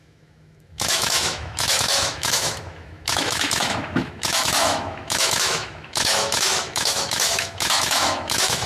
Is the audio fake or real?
fake